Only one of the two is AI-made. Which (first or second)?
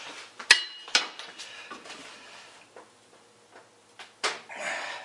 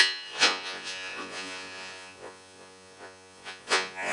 second